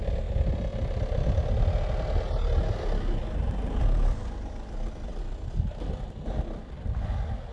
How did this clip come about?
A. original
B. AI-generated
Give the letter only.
A